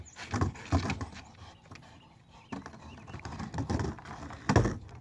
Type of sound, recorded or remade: recorded